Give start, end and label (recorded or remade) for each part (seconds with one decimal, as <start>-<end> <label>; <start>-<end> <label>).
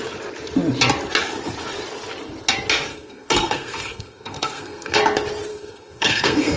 0.0-2.9 recorded; 2.9-5.0 remade; 5.0-5.5 recorded; 5.5-6.6 remade